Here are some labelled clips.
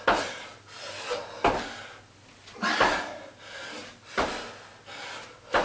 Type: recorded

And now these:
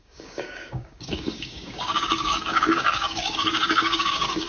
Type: remade